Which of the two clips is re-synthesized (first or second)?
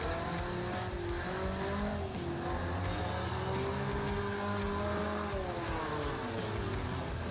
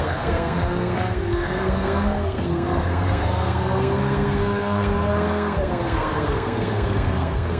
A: second